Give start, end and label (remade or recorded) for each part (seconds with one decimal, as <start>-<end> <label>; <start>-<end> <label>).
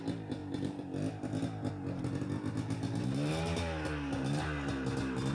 0.0-5.3 recorded